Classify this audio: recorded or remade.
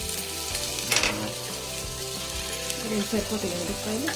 recorded